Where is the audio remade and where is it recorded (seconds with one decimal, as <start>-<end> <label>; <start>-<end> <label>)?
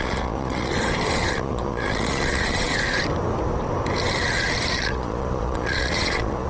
0.0-0.7 remade; 0.7-1.3 recorded; 1.3-2.7 remade; 2.7-4.7 recorded; 4.7-6.5 remade